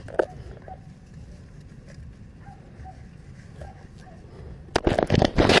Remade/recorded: recorded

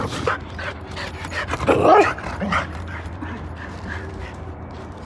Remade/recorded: remade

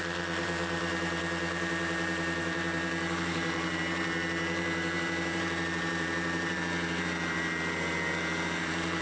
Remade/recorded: remade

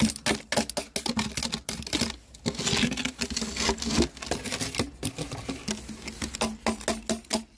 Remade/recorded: recorded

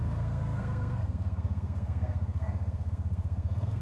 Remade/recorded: remade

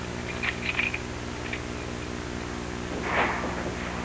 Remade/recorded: recorded